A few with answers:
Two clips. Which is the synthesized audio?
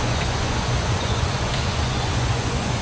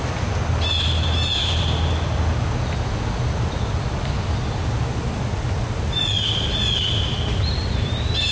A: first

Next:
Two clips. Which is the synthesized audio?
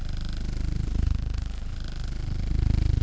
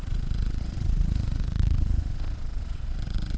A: second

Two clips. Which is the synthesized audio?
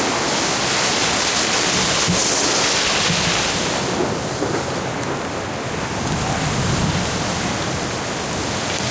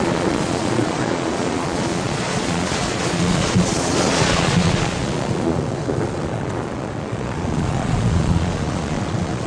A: second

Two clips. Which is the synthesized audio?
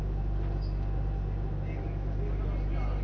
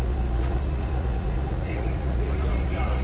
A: second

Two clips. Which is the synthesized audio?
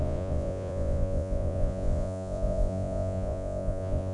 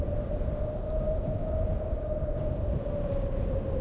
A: first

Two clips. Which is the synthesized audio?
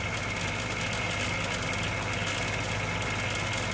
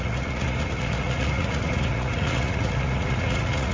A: second